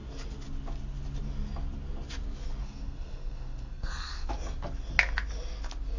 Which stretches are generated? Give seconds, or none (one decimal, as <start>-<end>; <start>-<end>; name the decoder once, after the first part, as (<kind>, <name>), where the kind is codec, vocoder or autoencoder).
2.6-4.3 (codec, SNAC)